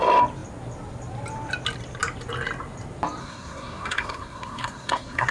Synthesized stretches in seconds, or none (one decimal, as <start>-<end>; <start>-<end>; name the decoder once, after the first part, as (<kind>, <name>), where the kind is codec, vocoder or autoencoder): 3.2-5.3 (codec, SNAC)